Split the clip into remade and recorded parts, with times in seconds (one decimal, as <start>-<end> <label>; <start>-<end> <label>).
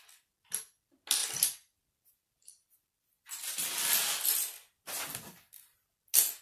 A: 0.0-6.4 recorded